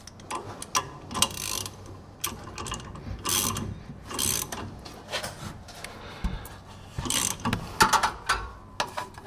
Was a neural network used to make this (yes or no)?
no